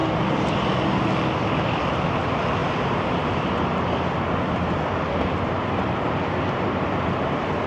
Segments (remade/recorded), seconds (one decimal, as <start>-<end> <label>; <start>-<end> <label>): 0.0-0.5 remade; 0.5-7.7 recorded